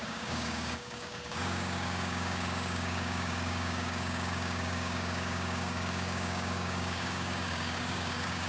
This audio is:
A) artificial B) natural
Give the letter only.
A